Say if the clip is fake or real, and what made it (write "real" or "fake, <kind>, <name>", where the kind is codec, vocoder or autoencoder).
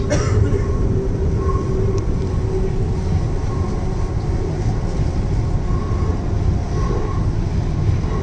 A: real